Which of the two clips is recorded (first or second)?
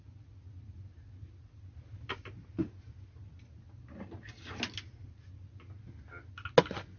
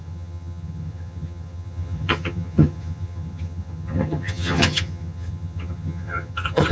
first